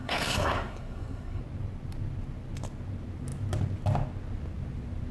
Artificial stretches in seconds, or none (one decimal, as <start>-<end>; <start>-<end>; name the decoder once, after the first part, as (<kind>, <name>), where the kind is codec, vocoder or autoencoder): 0.0-1.4 (codec, SNAC)